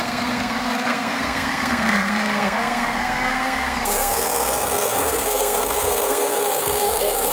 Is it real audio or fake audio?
fake